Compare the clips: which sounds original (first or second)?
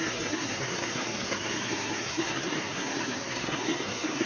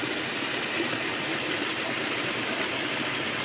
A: second